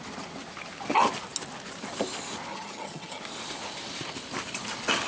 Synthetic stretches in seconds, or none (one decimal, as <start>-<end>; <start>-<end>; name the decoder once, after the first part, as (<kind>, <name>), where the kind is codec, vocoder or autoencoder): 2.5-3.2 (vocoder, HiFi-GAN)